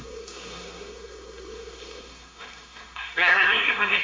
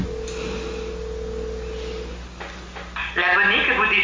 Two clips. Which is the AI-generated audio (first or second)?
first